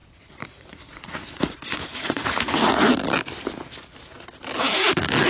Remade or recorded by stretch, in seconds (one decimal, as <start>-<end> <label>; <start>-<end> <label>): 0.0-2.9 remade; 2.9-5.3 recorded